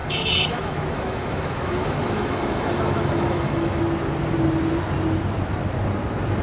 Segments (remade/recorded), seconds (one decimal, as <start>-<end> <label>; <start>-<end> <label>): 0.0-3.8 remade; 3.8-6.4 recorded

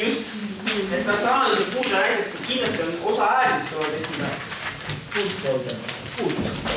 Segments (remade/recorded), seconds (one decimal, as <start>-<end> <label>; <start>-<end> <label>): 0.0-6.8 recorded

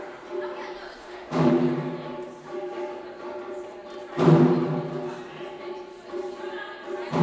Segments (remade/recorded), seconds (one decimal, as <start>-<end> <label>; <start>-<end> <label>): 0.0-1.0 recorded; 1.0-1.5 remade; 1.5-7.2 recorded

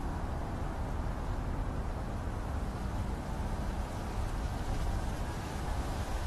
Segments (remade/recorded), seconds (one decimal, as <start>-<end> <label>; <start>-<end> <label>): 0.0-5.5 recorded; 5.5-6.3 remade

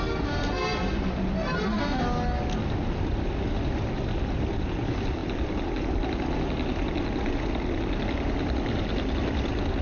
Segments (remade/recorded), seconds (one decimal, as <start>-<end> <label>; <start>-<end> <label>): 0.0-9.8 recorded